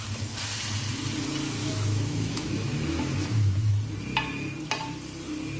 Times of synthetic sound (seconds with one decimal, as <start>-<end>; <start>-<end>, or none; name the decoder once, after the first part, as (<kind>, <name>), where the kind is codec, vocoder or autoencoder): 1.6-3.7 (autoencoder, DAC-VAE)